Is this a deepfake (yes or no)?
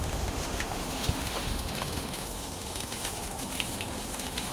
yes